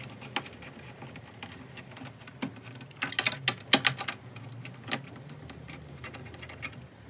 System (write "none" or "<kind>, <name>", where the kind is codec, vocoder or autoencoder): none